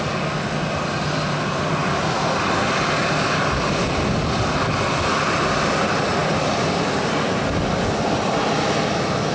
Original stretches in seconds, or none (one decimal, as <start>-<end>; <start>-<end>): 0.0-9.3